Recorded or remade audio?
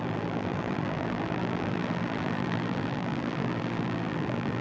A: remade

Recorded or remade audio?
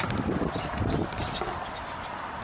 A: recorded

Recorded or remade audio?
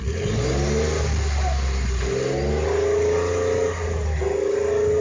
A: recorded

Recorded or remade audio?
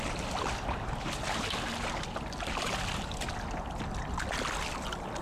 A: recorded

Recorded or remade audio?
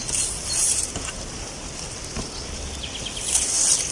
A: remade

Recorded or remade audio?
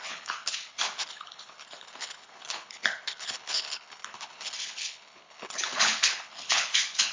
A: remade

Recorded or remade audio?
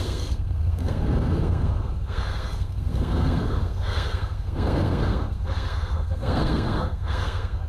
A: remade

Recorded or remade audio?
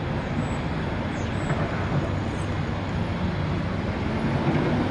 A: recorded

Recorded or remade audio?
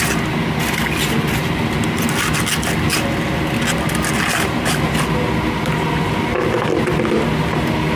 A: recorded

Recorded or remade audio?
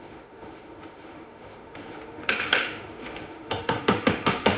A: remade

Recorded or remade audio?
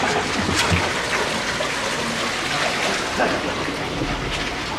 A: recorded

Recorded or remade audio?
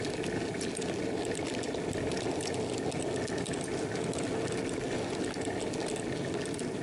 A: recorded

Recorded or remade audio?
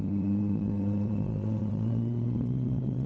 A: remade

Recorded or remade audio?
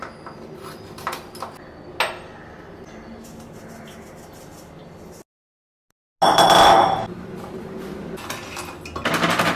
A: recorded